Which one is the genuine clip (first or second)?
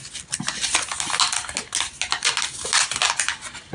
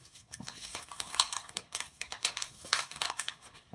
first